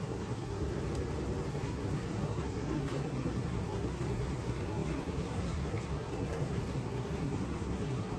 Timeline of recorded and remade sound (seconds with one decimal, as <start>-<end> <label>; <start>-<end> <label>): 0.0-0.8 remade; 0.8-1.5 recorded; 1.5-8.2 remade